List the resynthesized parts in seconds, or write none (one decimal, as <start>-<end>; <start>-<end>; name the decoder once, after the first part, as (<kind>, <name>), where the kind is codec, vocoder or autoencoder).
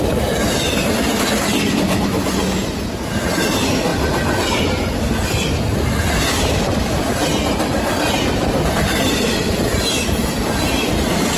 none